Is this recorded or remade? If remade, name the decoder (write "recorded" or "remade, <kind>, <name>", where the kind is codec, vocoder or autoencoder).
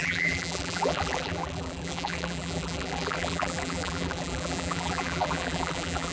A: remade, vocoder, BigVGAN v2